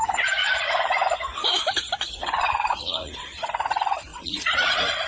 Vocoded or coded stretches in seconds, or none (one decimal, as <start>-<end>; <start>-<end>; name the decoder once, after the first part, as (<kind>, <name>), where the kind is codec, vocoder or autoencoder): 0.4-1.6 (vocoder, Vocos); 2.2-3.6; 4.1-5.1